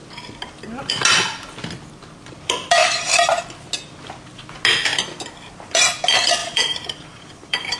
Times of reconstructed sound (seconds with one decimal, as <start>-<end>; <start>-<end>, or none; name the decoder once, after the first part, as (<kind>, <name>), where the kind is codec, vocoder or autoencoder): 2.8-3.4 (vocoder, BigVGAN v2); 6.4-7.8

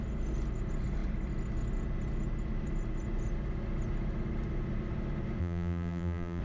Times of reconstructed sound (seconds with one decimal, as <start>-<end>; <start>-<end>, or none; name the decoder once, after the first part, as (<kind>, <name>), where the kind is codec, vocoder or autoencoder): 5.4-6.4 (vocoder, BigVGAN v2)

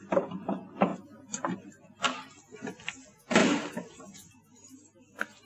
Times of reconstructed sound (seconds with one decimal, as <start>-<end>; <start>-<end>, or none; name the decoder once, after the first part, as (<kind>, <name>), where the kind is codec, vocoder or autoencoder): 3.4-4.0 (vocoder, BigVGAN v2)

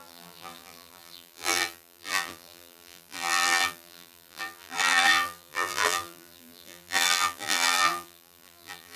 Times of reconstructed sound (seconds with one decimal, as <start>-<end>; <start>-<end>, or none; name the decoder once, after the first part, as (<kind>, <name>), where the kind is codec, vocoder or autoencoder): 0.0-9.0 (vocoder, BigVGAN v2)

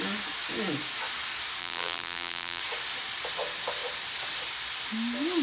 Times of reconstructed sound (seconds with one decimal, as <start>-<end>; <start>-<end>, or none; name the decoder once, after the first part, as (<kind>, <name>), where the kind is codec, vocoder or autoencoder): 1.6-2.6 (vocoder, BigVGAN v2)

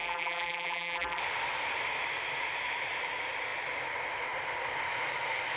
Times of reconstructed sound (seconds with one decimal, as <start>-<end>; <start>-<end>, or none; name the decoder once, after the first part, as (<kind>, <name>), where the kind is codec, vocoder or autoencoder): 0.0-1.2 (vocoder, BigVGAN v2)

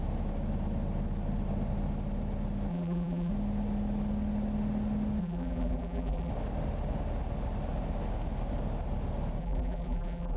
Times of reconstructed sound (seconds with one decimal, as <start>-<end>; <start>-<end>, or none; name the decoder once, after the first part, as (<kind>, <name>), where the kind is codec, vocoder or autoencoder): 2.7-3.3 (vocoder, BigVGAN v2); 5.2-6.3; 9.4-10.4